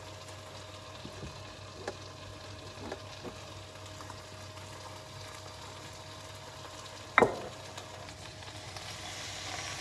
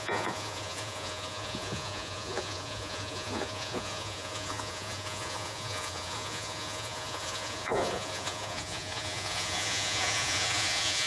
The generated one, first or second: second